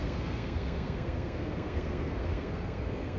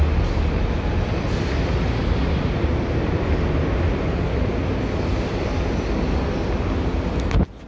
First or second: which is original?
second